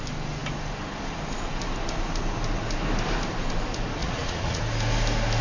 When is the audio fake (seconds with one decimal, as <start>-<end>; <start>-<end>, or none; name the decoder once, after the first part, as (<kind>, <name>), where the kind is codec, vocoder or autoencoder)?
4.0-4.6 (vocoder, Vocos)